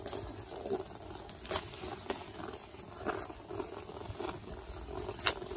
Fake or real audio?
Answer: real